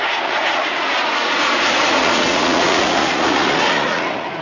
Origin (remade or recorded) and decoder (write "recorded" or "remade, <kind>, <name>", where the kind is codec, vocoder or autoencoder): remade, vocoder, Vocos